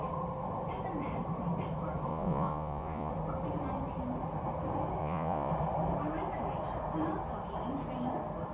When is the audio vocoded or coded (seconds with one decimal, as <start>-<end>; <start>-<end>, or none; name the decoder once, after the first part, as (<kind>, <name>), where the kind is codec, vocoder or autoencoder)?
2.1-3.1 (vocoder, Vocos); 5.0-5.5